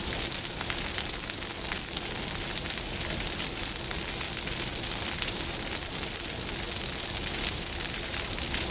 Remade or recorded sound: recorded